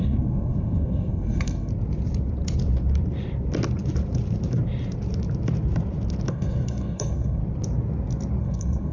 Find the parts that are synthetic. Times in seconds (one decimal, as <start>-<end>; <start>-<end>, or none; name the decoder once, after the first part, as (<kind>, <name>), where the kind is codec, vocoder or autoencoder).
0.0-1.7 (codec, SNAC); 6.3-7.4; 8.4-8.9